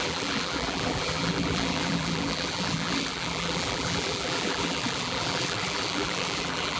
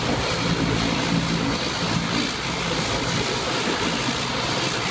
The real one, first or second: second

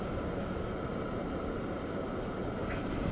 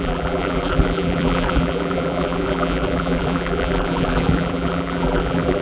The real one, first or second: first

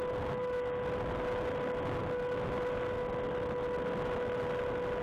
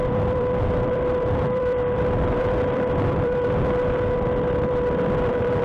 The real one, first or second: first